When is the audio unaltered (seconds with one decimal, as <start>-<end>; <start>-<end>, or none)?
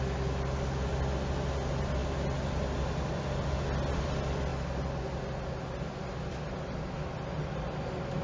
0.0-8.2